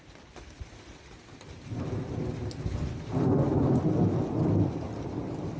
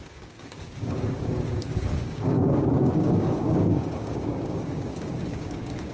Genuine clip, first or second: first